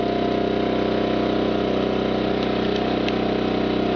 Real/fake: real